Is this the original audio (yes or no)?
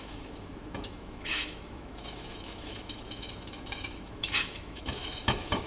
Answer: no